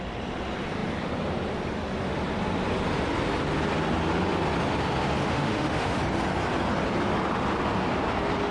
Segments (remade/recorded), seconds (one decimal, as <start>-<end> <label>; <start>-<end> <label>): 0.0-5.2 recorded; 5.2-6.0 remade; 6.0-8.5 recorded